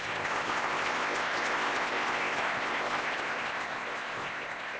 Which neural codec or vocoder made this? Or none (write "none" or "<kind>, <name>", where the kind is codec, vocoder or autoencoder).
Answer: codec, ZipCodec